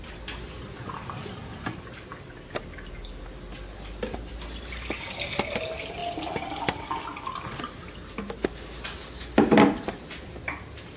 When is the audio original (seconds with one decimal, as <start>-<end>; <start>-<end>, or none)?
0.0-11.0

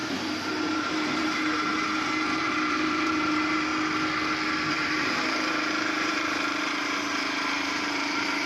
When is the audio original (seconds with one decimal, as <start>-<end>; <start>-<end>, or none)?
1.7-2.4; 3.7-4.7